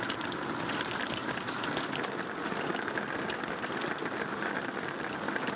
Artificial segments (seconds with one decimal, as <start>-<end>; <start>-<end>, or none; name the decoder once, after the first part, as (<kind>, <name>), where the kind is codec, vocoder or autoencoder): none